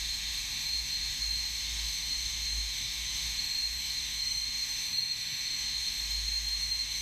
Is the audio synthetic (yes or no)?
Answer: yes